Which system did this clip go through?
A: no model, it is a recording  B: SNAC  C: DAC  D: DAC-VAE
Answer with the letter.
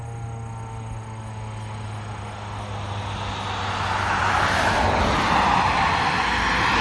A